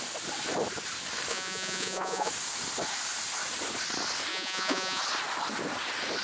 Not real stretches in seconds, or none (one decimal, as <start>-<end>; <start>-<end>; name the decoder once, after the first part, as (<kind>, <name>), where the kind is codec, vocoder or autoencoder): 1.3-2.3 (vocoder, Vocos); 4.3-5.0